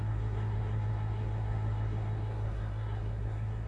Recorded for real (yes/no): no